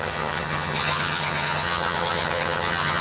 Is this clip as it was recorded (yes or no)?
no